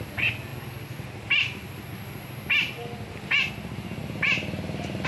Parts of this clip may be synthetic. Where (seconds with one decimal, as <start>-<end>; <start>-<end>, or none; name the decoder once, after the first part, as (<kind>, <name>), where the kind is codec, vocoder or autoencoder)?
none